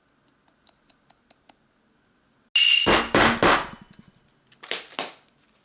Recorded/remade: recorded